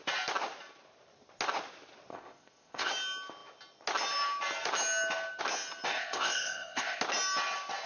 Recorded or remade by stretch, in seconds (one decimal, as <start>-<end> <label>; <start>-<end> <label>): 0.0-2.1 recorded; 2.1-2.9 remade; 2.9-5.9 recorded; 5.9-7.0 remade; 7.0-7.9 recorded